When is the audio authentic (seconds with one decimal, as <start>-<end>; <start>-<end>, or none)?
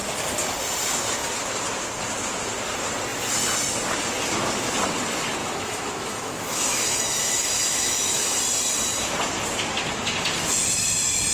0.0-5.4; 8.4-11.3